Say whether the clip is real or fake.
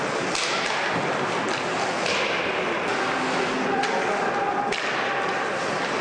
real